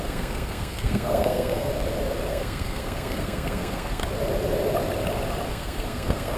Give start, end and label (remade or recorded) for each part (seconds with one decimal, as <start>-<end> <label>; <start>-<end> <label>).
0.0-1.7 remade; 1.7-2.3 recorded; 2.3-4.0 remade; 4.0-5.5 recorded; 5.5-6.4 remade